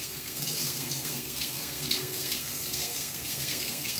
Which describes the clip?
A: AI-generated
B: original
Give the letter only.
A